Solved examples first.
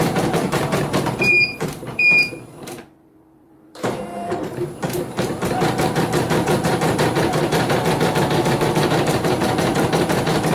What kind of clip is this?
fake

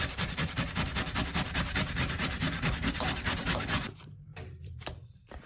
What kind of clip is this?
fake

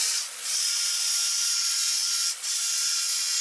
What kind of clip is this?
fake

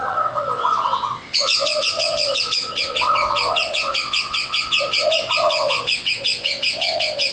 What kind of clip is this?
fake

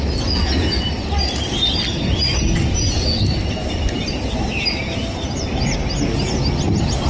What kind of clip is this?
real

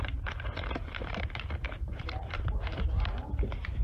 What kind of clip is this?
fake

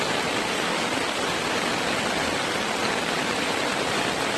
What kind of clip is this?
real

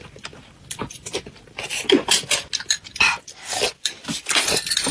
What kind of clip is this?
real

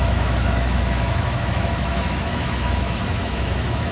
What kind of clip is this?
fake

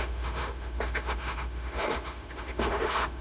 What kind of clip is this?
fake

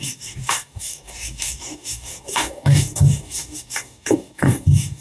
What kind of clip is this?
fake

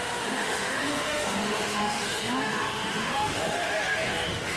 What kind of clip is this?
fake